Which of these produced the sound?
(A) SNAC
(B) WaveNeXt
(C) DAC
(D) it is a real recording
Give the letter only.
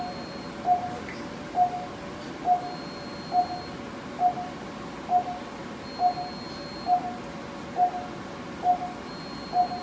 D